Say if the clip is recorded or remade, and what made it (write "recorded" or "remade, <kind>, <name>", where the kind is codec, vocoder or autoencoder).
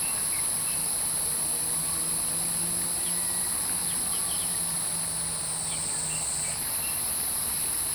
recorded